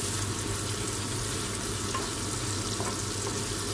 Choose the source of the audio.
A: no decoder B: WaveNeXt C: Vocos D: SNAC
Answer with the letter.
A